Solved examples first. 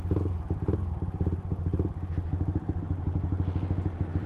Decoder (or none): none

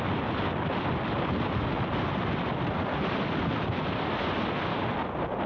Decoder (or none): none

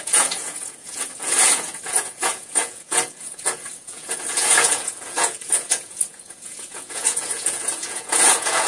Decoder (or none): vocoder, Vocos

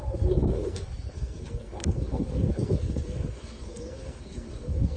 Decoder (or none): codec, SNAC